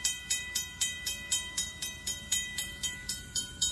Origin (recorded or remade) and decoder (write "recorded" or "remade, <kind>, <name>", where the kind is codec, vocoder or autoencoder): remade, vocoder, BigVGAN v2